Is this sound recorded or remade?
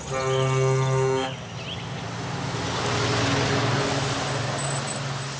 recorded